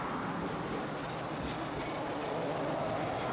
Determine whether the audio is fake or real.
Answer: real